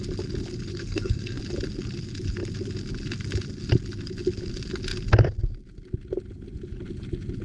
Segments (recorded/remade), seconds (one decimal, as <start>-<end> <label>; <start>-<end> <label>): 0.0-0.7 recorded; 0.7-1.4 remade; 1.4-7.4 recorded